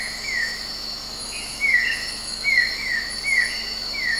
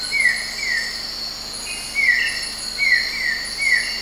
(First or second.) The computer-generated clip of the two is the first